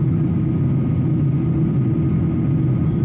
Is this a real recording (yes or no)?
yes